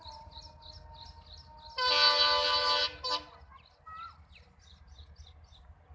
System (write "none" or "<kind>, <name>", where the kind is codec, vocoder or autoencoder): none